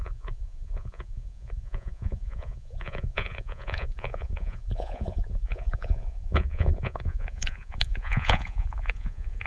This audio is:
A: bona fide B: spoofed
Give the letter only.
B